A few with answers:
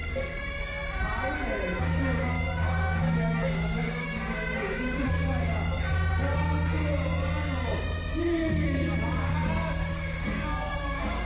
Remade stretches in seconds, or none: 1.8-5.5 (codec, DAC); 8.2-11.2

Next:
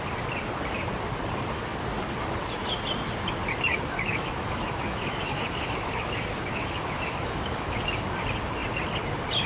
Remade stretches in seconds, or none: 3.7-8.1 (autoencoder, DAC-VAE)

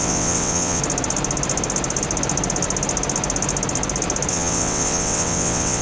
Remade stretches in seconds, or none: 0.0-0.8 (vocoder, WaveNeXt); 4.3-5.8